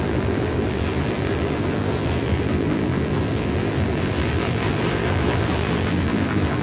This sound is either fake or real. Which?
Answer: fake